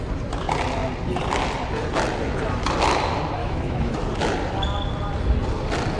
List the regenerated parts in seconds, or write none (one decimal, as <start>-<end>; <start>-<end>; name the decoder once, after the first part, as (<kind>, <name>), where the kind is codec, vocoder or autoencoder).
3.4-3.9 (autoencoder, DAC-VAE)